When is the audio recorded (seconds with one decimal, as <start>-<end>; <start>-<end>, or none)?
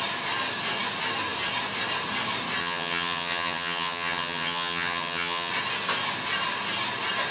0.0-2.6; 5.5-7.3